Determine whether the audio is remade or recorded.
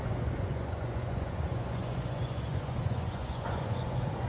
remade